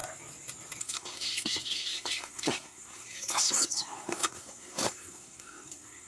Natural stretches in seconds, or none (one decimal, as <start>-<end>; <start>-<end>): 0.0-0.8